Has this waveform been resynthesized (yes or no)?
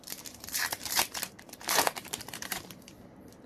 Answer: yes